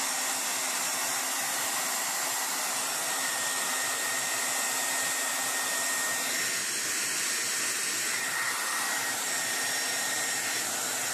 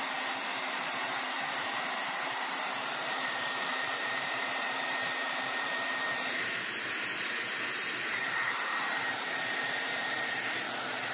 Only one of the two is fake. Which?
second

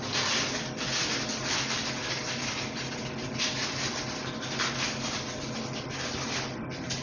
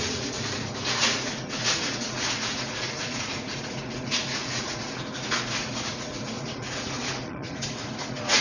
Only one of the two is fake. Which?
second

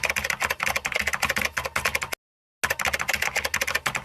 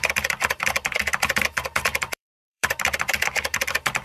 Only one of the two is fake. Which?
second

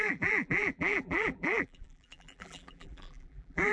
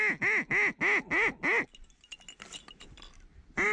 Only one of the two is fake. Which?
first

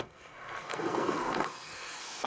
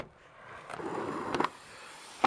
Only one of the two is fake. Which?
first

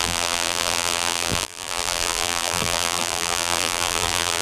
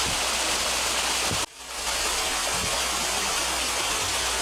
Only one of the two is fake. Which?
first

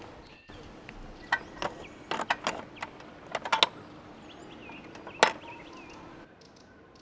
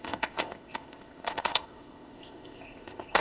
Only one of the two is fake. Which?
second